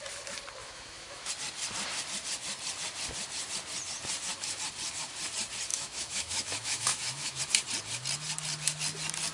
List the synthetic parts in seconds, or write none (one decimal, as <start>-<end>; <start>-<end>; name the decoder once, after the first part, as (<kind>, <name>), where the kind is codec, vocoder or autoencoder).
0.6-1.3 (autoencoder, DAC-VAE); 5.7-7.4